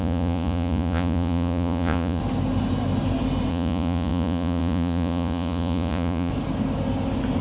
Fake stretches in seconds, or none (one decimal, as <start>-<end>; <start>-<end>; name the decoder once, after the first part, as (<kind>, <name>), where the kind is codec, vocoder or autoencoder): 0.0-2.2 (vocoder, Vocos); 3.5-6.3